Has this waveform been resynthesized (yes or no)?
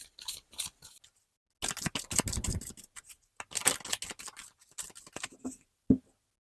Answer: no